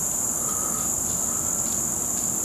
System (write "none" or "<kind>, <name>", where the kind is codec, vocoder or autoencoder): none